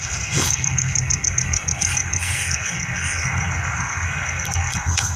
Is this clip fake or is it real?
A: fake